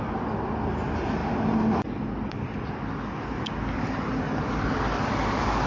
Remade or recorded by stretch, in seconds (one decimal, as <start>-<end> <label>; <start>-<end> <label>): 0.0-5.7 recorded